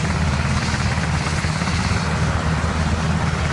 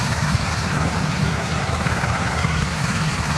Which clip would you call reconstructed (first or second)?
second